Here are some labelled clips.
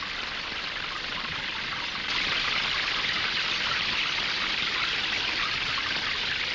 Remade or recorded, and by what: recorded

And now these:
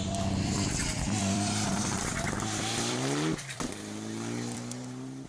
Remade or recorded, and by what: remade, vocoder, BigVGAN v2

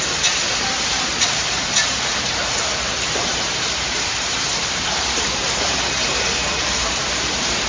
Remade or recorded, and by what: remade, vocoder, BigVGAN v2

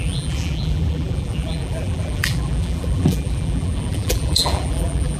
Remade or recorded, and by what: remade, vocoder, BigVGAN v2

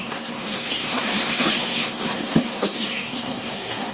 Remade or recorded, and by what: remade, codec, SNAC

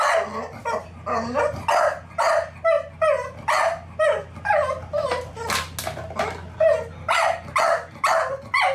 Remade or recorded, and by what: recorded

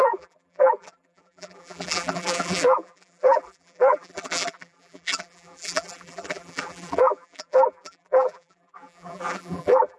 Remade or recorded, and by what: remade, vocoder, BigVGAN v2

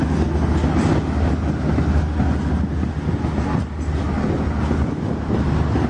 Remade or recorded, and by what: recorded